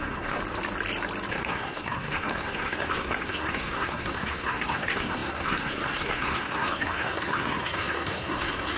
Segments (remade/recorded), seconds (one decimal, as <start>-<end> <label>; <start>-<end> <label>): 0.0-0.4 remade; 0.4-1.3 recorded; 1.3-8.8 remade